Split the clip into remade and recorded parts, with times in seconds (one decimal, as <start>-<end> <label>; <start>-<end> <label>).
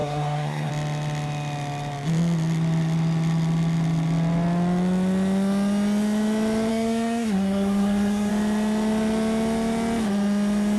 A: 0.0-0.7 remade; 0.7-6.7 recorded; 6.7-8.3 remade; 8.3-10.8 recorded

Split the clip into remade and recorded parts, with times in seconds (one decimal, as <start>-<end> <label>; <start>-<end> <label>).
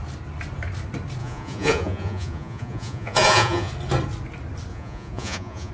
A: 0.0-1.2 recorded; 1.2-3.7 remade; 3.7-4.7 recorded; 4.7-5.7 remade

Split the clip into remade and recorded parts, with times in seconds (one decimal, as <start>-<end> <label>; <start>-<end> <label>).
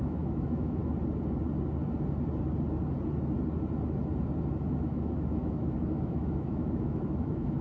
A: 0.0-0.8 remade; 0.8-4.7 recorded; 4.7-7.6 remade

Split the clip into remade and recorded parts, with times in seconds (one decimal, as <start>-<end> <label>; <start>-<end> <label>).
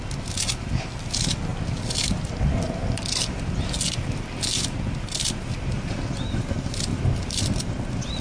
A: 0.0-1.5 recorded; 1.5-2.6 remade; 2.6-6.9 recorded; 6.9-7.4 remade; 7.4-8.2 recorded